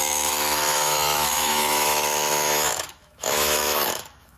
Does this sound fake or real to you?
fake